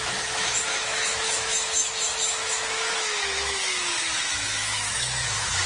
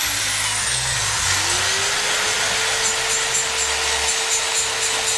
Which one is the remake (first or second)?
first